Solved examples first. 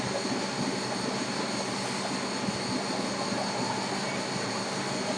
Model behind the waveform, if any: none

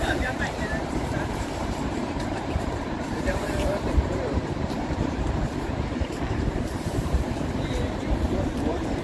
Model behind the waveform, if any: vocoder, BigVGAN v2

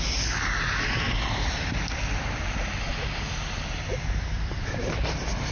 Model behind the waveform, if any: none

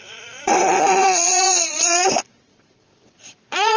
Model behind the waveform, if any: vocoder, Vocos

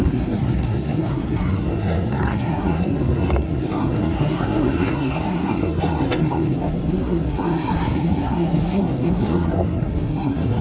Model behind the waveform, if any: codec, SNAC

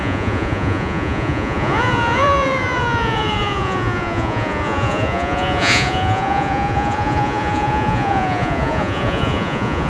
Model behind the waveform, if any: vocoder, Vocos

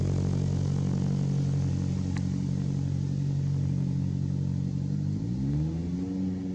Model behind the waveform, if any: none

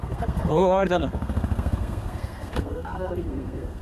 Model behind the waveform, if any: codec, SNAC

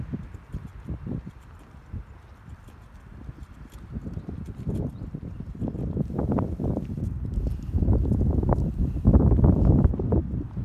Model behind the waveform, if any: none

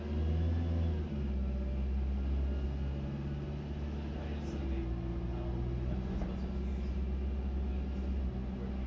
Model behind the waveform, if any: none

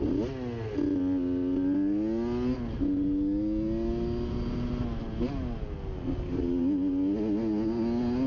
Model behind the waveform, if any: none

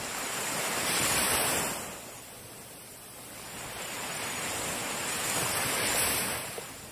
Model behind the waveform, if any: none